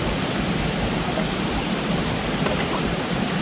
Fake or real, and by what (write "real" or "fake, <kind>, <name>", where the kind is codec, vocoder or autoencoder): real